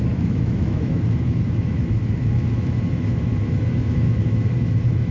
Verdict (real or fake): fake